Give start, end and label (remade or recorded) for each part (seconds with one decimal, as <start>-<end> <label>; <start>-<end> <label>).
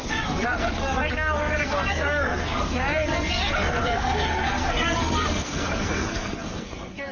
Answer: 0.0-7.1 remade